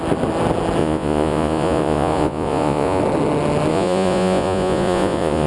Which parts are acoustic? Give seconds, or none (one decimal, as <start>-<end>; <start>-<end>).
0.0-0.8; 3.0-3.7